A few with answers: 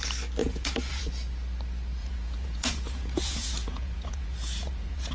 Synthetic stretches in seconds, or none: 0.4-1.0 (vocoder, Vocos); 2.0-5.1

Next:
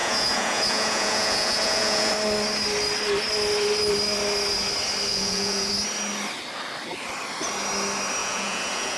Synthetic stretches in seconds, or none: 0.0-2.1 (vocoder, Vocos); 5.1-5.7; 8.2-9.0

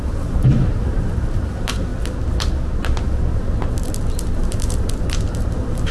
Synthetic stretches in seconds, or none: 0.0-1.9 (vocoder, BigVGAN v2); 5.0-5.9

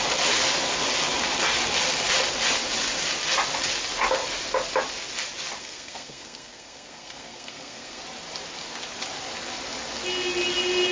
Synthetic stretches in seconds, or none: 5.6-8.0 (codec, SNAC)